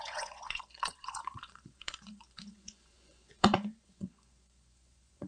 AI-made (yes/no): yes